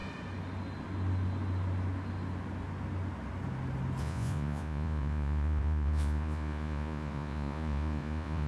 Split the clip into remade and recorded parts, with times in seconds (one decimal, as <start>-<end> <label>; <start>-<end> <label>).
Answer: 0.0-4.0 recorded; 4.0-8.5 remade